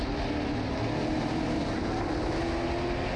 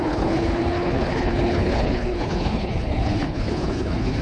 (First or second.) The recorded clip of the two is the first